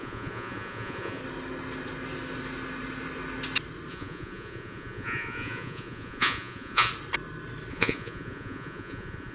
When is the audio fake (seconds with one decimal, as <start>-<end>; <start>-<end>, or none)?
0.0-1.2; 3.9-6.9; 7.7-9.3